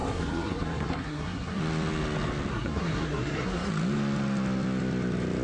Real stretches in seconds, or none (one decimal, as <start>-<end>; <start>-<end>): 1.6-2.5; 3.7-5.4